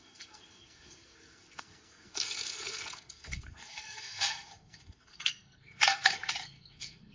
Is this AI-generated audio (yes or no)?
yes